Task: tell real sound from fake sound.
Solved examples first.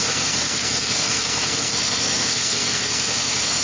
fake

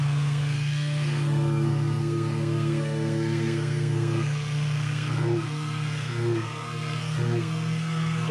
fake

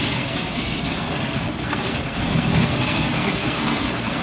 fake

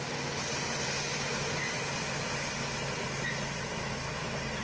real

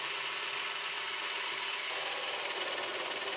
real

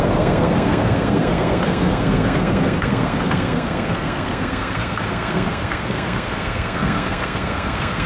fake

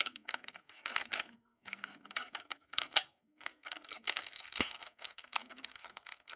fake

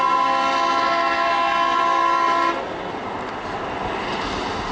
real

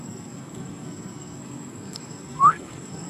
fake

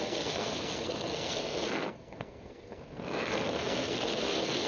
fake